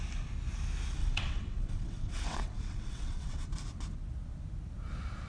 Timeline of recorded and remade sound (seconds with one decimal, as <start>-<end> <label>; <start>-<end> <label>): 0.0-1.0 recorded; 1.0-3.5 remade; 3.5-5.3 recorded